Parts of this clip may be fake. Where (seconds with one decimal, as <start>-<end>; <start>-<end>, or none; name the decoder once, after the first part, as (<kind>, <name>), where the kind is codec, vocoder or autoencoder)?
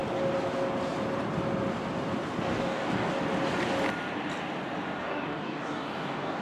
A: 2.5-3.1 (codec, DAC); 5.0-6.4